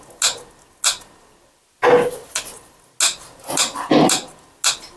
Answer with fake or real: real